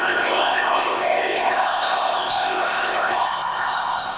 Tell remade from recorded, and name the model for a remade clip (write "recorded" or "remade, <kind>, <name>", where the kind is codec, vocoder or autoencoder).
remade, codec, ZipCodec